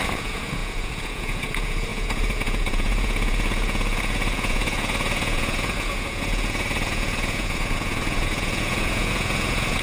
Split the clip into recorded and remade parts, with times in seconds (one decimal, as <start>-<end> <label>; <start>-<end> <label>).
0.0-9.8 remade